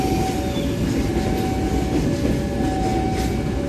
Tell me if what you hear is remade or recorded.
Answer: recorded